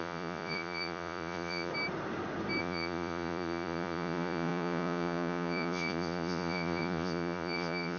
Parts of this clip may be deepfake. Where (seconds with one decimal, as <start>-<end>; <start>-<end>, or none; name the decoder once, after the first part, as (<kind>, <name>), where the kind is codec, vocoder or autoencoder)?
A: 0.0-1.7 (vocoder, Vocos); 2.6-8.0